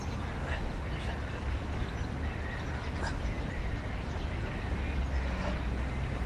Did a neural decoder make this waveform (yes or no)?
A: no